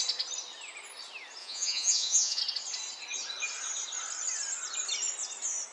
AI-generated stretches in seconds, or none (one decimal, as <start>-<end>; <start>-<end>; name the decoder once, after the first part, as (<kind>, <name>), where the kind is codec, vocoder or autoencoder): 1.4-2.4 (vocoder, Vocos)